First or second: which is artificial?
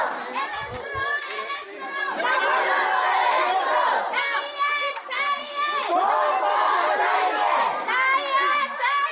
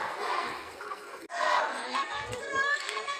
second